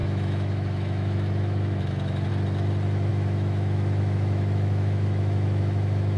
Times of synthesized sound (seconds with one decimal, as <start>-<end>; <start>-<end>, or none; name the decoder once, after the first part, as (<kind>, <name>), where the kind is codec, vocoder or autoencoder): 0.0-2.3 (autoencoder, DAC-VAE); 3.1-6.2